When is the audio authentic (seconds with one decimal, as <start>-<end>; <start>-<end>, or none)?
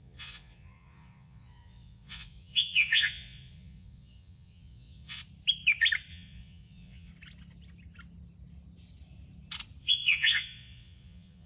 5.2-6.1; 7.1-9.8